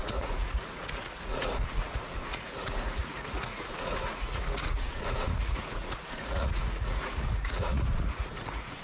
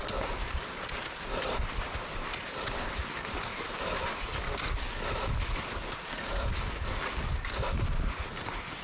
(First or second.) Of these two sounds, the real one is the second